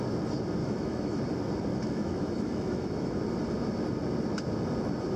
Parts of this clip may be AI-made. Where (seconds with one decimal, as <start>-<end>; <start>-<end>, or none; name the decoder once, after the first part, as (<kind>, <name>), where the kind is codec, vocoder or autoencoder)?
0.6-1.2 (autoencoder, DAC-VAE); 1.7-3.2